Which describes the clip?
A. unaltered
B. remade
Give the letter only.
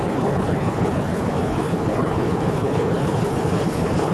B